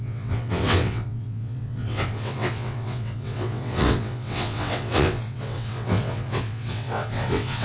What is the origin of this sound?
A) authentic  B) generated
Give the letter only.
B